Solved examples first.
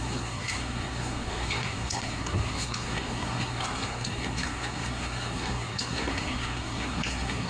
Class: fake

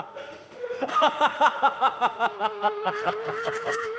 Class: fake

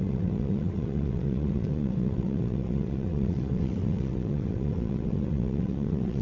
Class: fake